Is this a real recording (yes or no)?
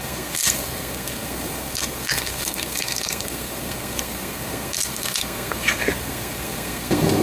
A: no